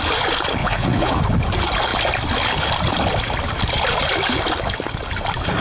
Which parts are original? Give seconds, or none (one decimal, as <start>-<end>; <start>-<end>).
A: 0.0-0.6; 1.2-5.6